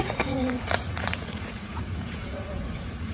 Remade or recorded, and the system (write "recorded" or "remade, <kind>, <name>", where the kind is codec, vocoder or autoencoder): remade, vocoder, Vocos